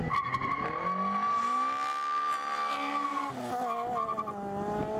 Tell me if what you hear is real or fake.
real